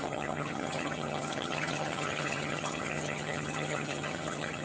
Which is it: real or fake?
fake